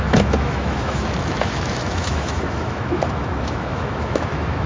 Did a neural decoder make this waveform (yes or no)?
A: yes